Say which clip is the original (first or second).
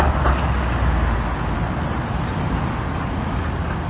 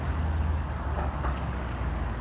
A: first